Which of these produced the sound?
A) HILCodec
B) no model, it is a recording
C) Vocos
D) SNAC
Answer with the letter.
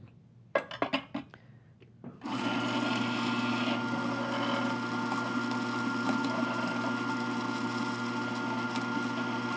B